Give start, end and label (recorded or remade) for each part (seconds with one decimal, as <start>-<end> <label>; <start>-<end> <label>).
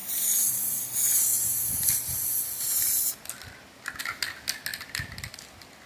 0.0-5.9 recorded